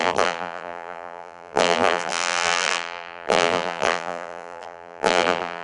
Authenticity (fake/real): fake